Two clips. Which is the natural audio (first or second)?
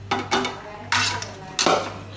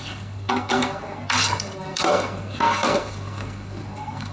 first